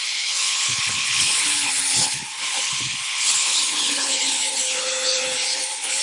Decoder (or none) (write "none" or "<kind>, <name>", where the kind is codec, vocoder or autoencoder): codec, HILCodec